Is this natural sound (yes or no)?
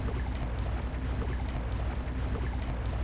yes